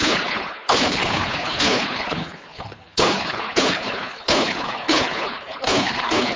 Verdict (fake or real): fake